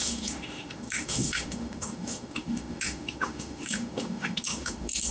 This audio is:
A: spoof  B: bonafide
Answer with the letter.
A